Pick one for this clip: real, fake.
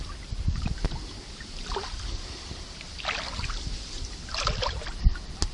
real